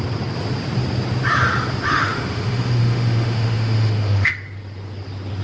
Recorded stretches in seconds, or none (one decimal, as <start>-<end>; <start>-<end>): 0.0-1.9; 4.3-5.4